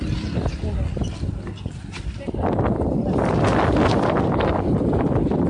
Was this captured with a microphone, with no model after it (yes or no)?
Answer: yes